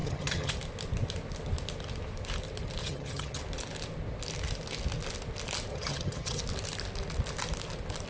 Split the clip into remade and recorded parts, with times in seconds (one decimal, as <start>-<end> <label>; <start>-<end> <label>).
0.0-0.5 remade; 0.5-2.8 recorded; 2.8-3.4 remade; 3.4-5.7 recorded; 5.7-6.4 remade; 6.4-8.1 recorded